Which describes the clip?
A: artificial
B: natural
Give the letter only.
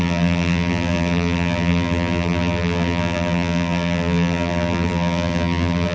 A